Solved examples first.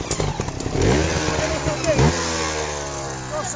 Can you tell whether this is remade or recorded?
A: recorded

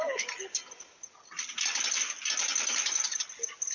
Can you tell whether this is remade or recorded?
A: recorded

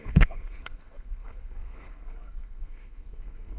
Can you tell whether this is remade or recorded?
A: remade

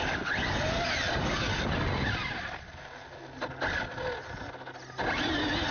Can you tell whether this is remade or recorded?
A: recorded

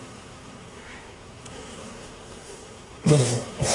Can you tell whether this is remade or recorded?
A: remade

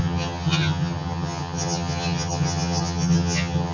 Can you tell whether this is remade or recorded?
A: remade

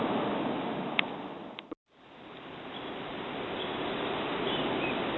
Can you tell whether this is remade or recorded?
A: recorded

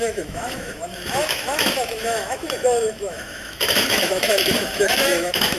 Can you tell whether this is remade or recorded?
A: remade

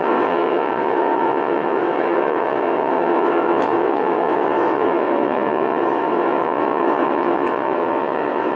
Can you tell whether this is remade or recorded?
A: remade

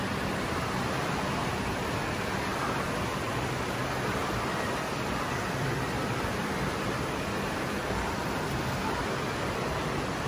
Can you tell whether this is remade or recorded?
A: remade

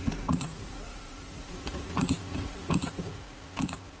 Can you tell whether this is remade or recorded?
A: remade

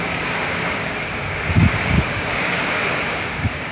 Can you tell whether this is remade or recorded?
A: remade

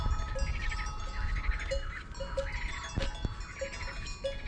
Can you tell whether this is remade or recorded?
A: recorded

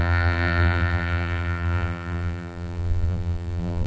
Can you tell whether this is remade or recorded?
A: remade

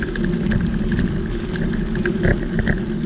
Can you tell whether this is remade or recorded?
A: recorded